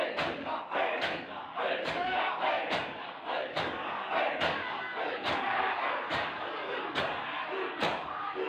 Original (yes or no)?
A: no